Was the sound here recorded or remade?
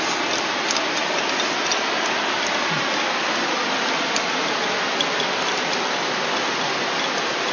recorded